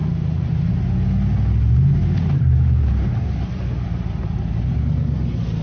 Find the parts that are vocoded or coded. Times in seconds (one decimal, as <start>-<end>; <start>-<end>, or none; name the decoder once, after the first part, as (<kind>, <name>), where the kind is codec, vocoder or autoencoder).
0.0-0.7 (vocoder, BigVGAN v2); 2.0-3.2